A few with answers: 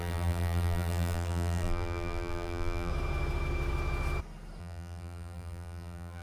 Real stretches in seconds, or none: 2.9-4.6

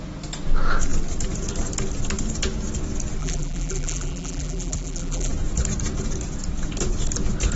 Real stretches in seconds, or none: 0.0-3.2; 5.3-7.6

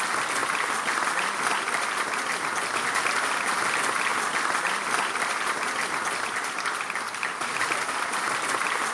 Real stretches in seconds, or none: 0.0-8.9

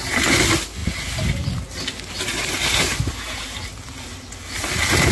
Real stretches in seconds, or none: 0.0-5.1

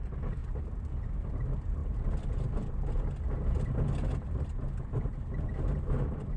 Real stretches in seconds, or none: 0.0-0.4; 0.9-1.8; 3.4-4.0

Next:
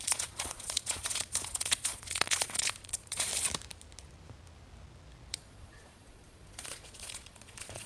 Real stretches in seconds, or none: 3.3-5.3

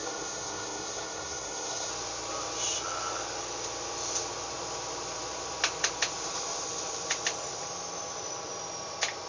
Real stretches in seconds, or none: 1.9-9.3

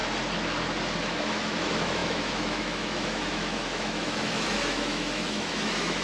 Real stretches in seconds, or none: 0.0-1.0